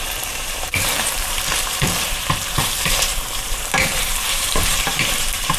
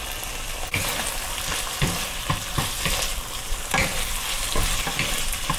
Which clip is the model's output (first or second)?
first